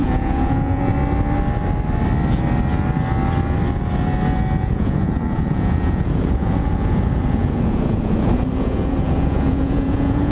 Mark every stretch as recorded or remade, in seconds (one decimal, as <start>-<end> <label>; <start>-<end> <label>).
0.0-0.9 remade; 0.9-4.6 recorded; 4.6-10.3 remade